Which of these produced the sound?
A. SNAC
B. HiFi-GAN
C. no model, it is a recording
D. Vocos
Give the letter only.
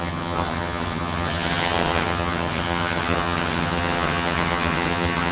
B